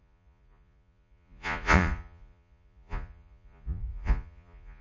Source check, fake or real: fake